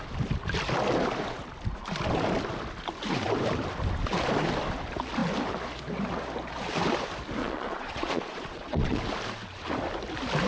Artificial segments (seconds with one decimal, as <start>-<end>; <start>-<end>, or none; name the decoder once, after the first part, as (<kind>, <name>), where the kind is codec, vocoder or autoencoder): 7.4-9.0 (vocoder, Vocos)